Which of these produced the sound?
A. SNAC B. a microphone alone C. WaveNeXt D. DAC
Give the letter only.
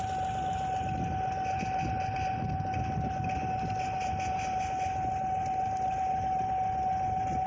B